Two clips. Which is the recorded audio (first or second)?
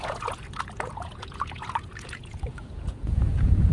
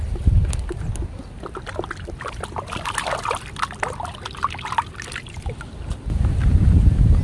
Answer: second